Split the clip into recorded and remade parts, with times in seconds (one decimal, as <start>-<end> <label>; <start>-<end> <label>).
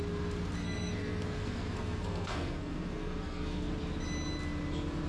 0.0-0.6 recorded; 0.6-3.7 remade; 3.7-5.1 recorded